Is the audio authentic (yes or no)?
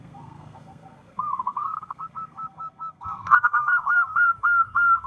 no